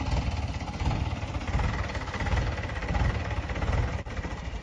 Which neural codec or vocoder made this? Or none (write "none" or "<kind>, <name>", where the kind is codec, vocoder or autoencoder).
vocoder, BigVGAN v2